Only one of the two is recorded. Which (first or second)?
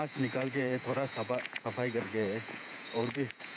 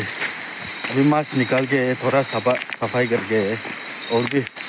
second